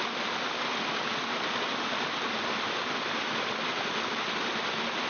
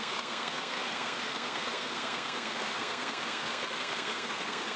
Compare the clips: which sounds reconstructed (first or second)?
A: second